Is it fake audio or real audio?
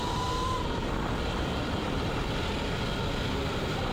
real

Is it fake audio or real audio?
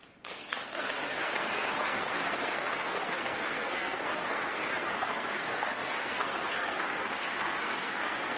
fake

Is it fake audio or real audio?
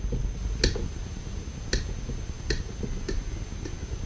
real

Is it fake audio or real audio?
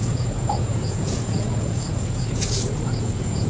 fake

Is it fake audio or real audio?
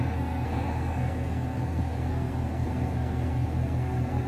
fake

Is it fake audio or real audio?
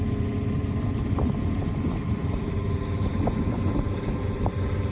real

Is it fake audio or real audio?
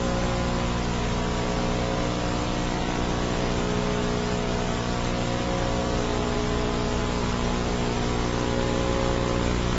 real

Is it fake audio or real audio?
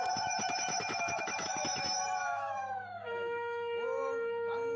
fake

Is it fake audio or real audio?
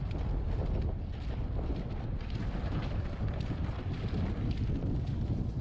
real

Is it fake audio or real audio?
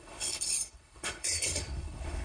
fake